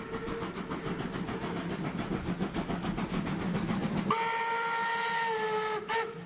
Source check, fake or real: real